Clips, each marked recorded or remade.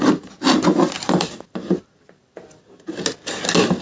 recorded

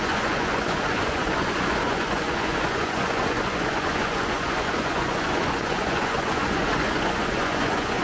remade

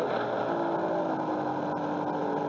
recorded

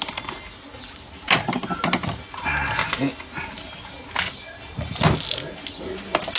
recorded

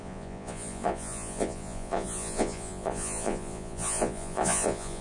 remade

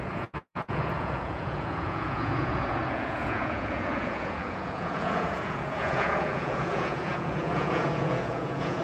remade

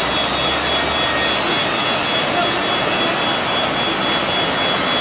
recorded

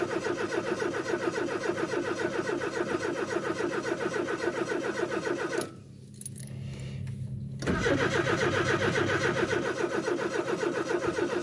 recorded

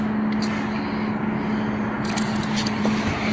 recorded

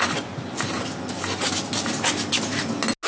recorded